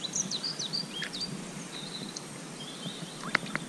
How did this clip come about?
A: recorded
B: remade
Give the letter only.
B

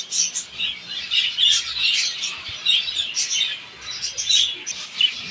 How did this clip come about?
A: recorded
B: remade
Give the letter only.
A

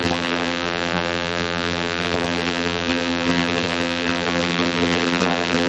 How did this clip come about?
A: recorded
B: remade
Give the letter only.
B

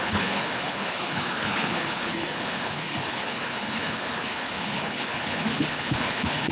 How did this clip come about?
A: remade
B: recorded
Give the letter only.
A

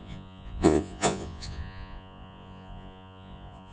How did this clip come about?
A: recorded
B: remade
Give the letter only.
B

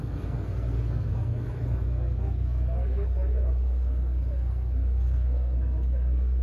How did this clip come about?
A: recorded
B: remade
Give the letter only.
B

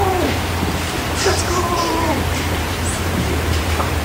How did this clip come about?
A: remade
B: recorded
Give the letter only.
A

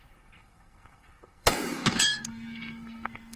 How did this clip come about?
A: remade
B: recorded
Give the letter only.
A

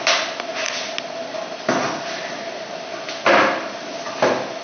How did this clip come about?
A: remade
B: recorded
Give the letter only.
B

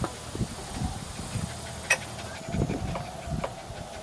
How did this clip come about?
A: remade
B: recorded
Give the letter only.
B